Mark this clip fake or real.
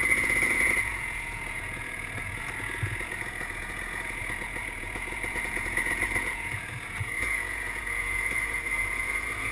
fake